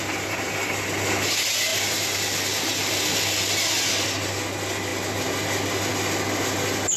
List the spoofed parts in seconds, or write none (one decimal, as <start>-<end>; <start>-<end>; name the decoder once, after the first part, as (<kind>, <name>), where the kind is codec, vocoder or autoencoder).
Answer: none